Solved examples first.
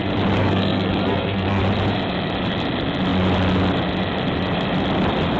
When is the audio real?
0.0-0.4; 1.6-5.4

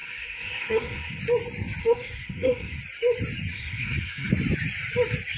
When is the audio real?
1.2-1.8; 2.8-3.5; 4.3-5.4

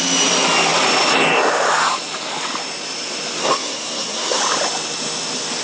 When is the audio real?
0.0-3.4; 4.4-5.6